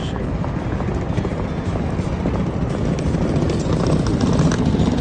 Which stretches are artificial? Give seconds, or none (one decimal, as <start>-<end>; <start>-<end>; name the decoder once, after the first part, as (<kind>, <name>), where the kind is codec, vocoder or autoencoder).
none